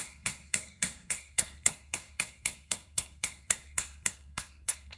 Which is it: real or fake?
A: fake